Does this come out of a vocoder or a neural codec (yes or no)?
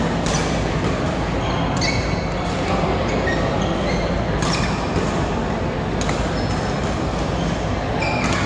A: no